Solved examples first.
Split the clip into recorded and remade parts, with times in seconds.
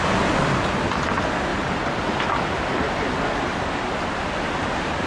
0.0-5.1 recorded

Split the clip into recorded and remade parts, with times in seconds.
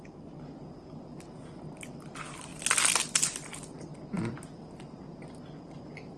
0.0-6.2 recorded